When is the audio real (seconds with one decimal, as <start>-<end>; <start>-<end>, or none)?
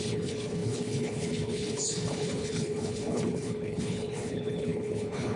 none